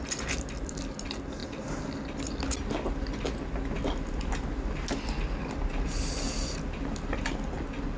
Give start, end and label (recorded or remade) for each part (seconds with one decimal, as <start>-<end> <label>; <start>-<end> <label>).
0.0-8.0 recorded